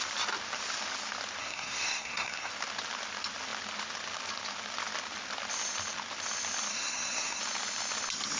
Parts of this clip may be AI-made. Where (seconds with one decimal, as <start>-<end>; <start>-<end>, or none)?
1.4-2.5; 6.7-7.4